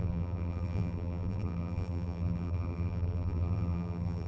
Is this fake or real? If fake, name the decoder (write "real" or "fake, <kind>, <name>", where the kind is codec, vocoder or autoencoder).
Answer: fake, vocoder, BigVGAN v2